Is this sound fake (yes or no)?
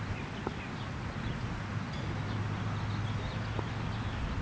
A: no